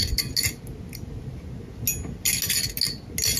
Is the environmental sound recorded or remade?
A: recorded